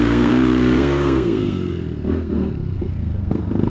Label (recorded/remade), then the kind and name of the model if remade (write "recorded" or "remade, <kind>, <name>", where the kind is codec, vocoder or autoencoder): remade, codec, SNAC